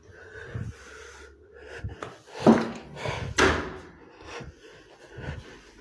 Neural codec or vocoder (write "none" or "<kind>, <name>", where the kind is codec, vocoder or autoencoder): none